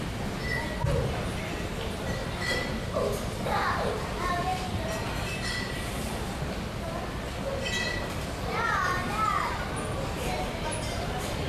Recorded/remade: recorded